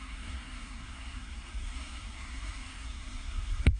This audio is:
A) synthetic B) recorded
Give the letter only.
A